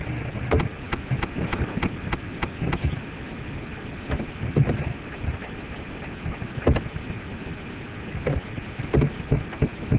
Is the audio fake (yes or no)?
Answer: no